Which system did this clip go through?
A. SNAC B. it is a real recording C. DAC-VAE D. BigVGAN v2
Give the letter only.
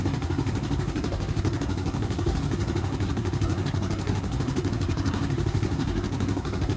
A